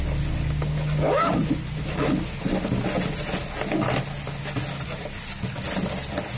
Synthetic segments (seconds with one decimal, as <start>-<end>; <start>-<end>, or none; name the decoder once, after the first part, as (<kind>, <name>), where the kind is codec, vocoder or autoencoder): none